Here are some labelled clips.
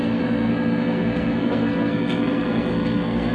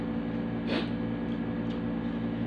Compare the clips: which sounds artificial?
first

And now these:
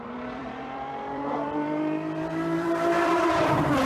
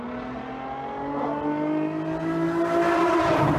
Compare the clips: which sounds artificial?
first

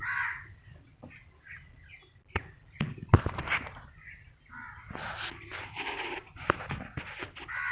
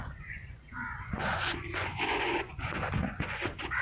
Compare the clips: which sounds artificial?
second